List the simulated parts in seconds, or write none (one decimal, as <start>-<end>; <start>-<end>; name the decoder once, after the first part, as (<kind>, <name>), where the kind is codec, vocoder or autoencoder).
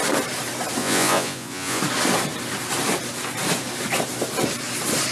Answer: 0.8-1.8 (vocoder, Vocos)